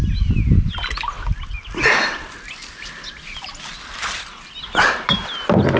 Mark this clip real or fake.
real